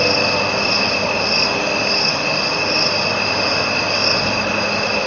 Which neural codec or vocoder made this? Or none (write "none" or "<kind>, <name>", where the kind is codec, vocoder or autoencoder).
none